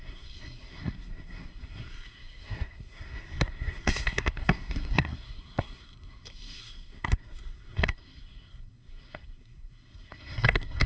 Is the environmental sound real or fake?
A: fake